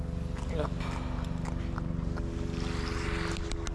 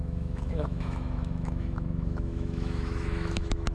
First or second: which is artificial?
second